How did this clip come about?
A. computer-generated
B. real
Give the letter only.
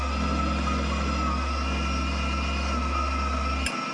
B